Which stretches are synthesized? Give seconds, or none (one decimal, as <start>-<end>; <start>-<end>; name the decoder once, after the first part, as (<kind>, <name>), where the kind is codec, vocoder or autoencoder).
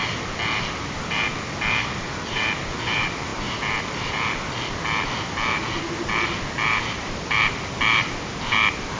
none